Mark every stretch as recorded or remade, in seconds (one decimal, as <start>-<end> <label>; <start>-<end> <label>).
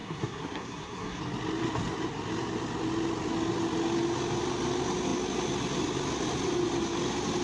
0.0-1.2 remade; 1.2-7.4 recorded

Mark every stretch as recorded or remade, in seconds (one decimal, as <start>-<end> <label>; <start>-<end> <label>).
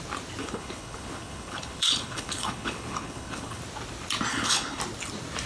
0.0-0.4 recorded; 0.4-3.6 remade; 3.6-4.3 recorded; 4.3-4.8 remade; 4.8-5.5 recorded